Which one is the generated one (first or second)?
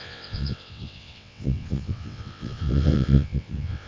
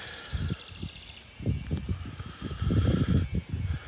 first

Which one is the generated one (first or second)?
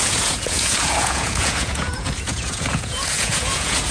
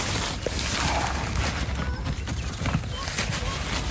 first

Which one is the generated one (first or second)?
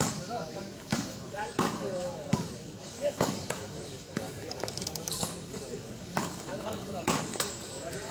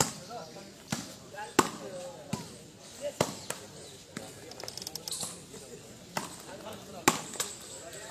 first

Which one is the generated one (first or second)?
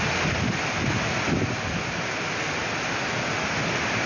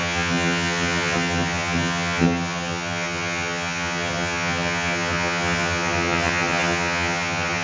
second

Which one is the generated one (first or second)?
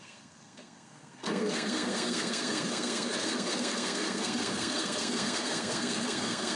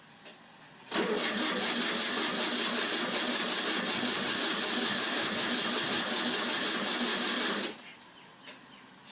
first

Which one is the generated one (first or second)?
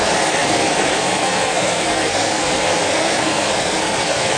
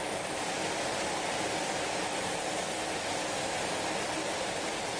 first